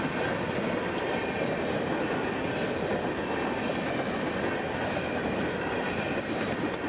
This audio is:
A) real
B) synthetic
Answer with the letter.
A